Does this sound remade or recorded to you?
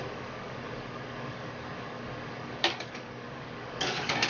remade